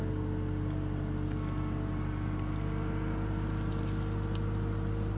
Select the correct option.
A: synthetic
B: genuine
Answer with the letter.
B